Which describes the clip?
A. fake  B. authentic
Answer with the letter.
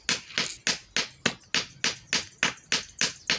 B